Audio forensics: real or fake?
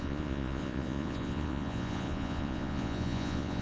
fake